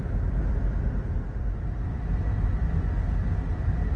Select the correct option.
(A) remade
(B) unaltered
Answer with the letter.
B